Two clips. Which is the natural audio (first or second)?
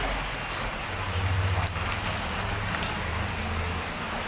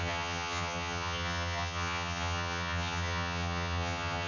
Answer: first